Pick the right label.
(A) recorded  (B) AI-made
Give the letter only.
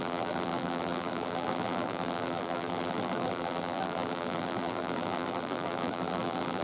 B